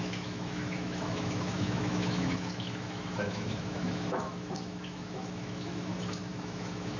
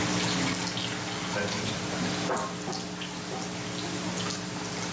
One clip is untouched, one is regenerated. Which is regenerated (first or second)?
first